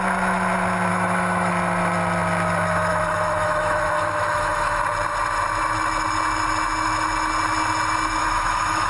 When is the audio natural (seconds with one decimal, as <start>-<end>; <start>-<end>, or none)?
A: 0.0-0.9; 1.5-2.9; 4.8-8.2